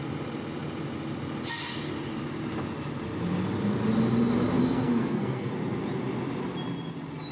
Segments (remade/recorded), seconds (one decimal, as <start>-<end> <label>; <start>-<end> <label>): 0.0-4.6 recorded; 4.6-5.5 remade; 5.5-7.3 recorded